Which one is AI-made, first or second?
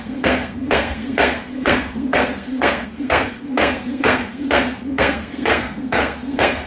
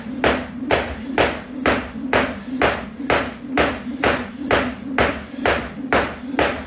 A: first